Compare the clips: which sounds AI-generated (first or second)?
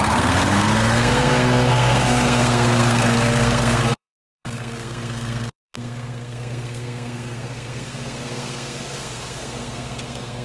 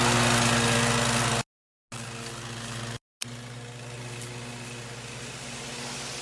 first